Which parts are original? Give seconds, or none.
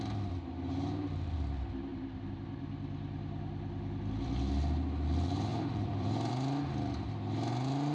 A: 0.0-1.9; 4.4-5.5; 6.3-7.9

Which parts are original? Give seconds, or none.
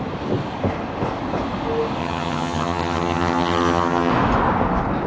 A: 0.0-2.0; 4.1-5.1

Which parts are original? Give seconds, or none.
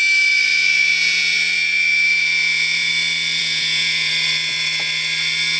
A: 0.0-0.5; 2.9-3.4; 4.1-5.6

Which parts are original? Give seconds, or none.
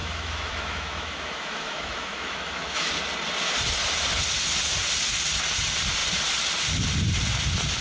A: 2.9-7.8